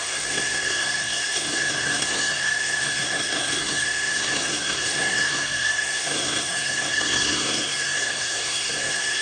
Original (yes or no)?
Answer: no